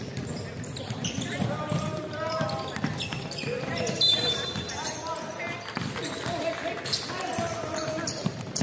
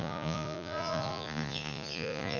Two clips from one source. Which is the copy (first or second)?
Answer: second